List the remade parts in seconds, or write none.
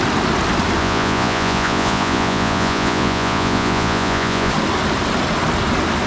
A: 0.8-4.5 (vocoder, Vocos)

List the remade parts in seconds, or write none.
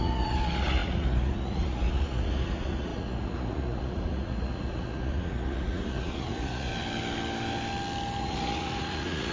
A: 0.0-6.7 (vocoder, Vocos); 8.2-9.3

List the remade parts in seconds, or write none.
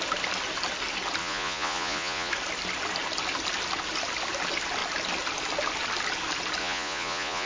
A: 1.2-2.3 (vocoder, Vocos); 6.6-7.5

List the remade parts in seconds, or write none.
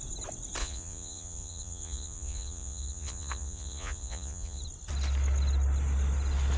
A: 0.6-4.6 (vocoder, Vocos)